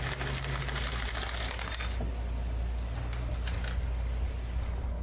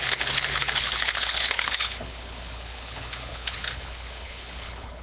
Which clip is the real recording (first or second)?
first